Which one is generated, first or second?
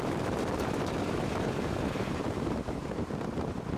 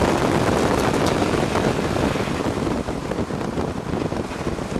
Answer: first